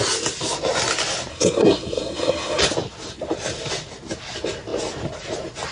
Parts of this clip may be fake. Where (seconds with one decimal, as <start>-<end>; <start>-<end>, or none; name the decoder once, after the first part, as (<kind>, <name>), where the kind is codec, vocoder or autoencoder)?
1.3-2.6 (codec, SNAC)